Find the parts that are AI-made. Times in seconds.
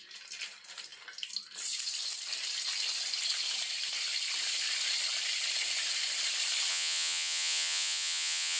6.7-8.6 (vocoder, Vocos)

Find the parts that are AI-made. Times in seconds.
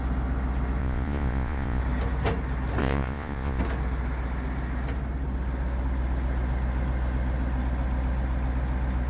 0.8-1.8 (vocoder, Vocos); 2.8-3.6